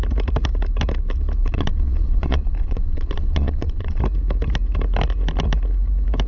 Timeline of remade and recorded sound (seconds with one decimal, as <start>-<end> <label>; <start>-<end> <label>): 0.0-1.4 recorded; 1.4-4.0 remade; 4.0-6.3 recorded